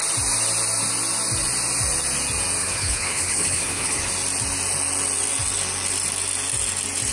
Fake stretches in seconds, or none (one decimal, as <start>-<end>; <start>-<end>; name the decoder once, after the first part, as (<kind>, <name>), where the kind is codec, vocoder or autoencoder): 2.6-4.1 (codec, HILCodec)